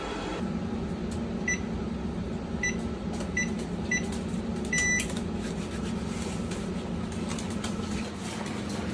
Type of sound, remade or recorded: recorded